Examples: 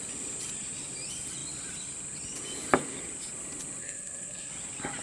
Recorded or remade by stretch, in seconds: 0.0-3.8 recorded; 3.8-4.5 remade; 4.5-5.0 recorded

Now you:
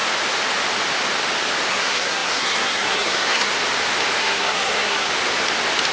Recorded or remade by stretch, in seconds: 0.0-1.7 recorded; 1.7-3.5 remade; 3.5-4.2 recorded; 4.2-5.1 remade; 5.1-5.9 recorded

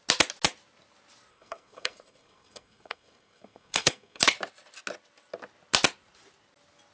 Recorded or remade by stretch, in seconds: 0.0-1.3 recorded; 1.3-4.2 remade; 4.2-6.9 recorded